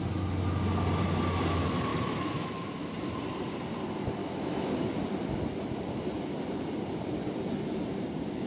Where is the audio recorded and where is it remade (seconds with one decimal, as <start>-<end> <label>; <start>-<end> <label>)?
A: 0.0-1.9 recorded; 1.9-2.9 remade; 2.9-4.2 recorded; 4.2-4.7 remade; 4.7-8.5 recorded